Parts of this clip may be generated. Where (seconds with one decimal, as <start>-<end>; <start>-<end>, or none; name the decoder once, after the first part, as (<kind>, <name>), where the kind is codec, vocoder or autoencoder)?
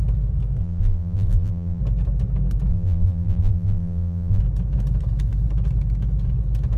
0.6-1.8 (vocoder, BigVGAN v2); 2.7-4.4